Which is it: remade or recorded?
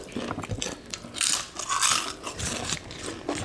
recorded